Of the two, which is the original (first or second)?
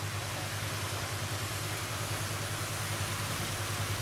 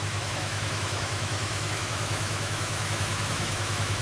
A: first